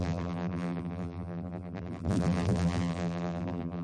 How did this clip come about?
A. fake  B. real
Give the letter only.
A